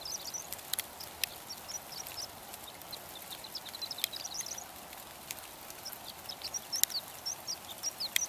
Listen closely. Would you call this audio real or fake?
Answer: real